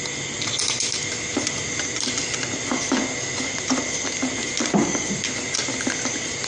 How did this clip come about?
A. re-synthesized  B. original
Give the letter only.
B